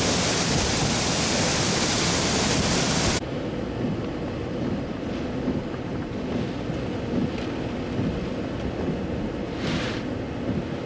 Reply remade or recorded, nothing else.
recorded